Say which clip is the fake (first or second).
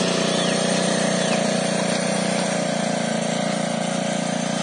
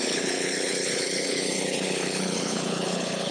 second